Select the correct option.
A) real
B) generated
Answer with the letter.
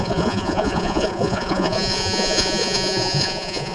B